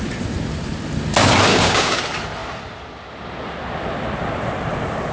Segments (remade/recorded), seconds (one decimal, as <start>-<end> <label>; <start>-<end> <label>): 0.0-1.5 recorded; 1.5-2.0 remade; 2.0-5.1 recorded